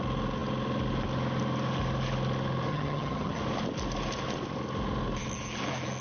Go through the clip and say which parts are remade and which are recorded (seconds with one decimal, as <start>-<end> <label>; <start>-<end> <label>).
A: 0.0-2.7 recorded; 2.7-3.4 remade; 3.4-6.0 recorded